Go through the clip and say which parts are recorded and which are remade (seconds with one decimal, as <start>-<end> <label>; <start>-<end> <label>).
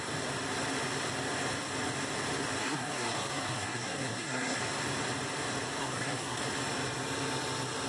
0.0-2.6 recorded; 2.6-4.6 remade; 4.6-5.8 recorded; 5.8-6.4 remade; 6.4-7.9 recorded